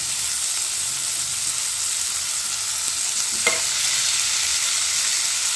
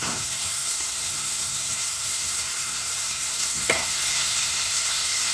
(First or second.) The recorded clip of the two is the first